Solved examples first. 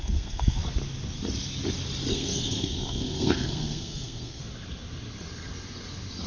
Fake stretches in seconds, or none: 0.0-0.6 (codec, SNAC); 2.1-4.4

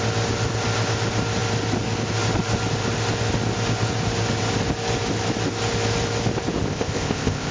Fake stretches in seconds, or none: 6.7-7.5 (codec, ZipCodec)

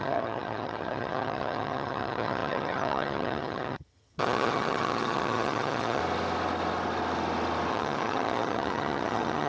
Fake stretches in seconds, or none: 0.0-6.0 (vocoder, HiFi-GAN); 7.7-9.5

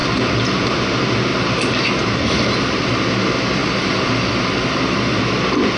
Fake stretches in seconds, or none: 0.0-0.9 (vocoder, BigVGAN v2); 1.3-2.9; 3.6-5.2